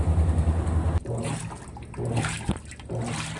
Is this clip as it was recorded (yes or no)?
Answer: yes